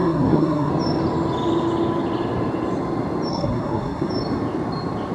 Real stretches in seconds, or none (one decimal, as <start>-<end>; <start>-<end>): 0.7-3.3; 4.1-5.1